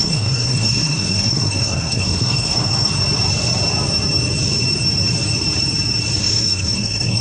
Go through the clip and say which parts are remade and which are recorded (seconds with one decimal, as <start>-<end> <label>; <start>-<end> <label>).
0.0-2.9 remade; 2.9-6.2 recorded; 6.2-7.2 remade